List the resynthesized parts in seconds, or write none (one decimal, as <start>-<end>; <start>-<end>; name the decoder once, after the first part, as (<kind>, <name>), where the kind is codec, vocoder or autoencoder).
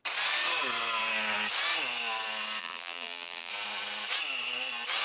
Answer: 2.6-3.5 (vocoder, BigVGAN v2)